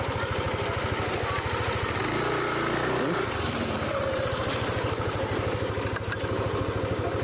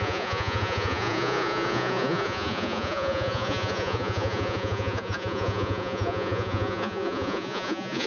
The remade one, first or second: second